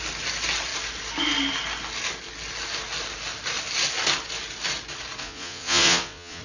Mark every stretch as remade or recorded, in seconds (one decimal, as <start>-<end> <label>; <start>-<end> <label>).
0.0-5.2 recorded; 5.2-6.4 remade